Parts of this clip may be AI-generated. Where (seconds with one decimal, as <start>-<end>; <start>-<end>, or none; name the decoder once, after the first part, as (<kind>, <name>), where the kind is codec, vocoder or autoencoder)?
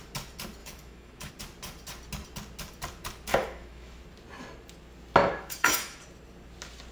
0.6-1.3 (autoencoder, DAC-VAE); 3.3-4.0; 5.2-6.0